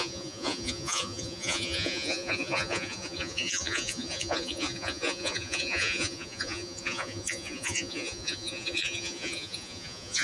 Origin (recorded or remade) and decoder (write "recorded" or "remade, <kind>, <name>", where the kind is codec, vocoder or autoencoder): remade, vocoder, Vocos